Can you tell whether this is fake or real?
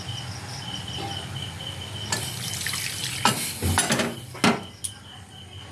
real